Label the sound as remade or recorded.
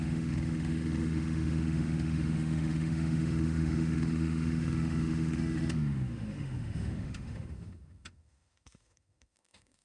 remade